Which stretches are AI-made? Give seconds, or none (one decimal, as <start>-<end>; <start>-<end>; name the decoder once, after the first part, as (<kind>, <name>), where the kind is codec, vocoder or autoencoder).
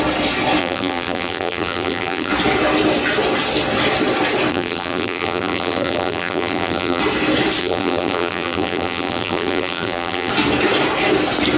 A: 0.6-2.3 (vocoder, BigVGAN v2); 4.5-7.0; 7.6-10.3